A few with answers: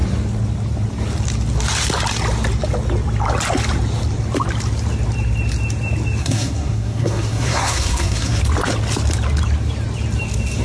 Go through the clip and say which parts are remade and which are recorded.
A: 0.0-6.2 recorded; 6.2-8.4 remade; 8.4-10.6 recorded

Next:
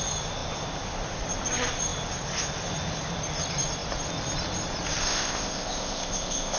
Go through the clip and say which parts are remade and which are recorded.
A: 0.0-5.0 recorded; 5.0-6.6 remade

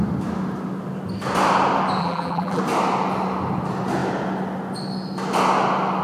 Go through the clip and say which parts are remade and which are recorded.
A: 0.0-2.0 recorded; 2.0-2.6 remade; 2.6-6.0 recorded